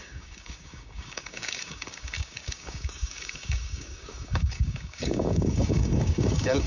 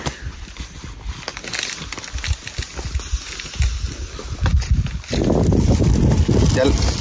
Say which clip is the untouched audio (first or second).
second